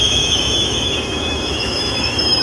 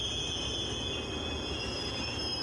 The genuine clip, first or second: second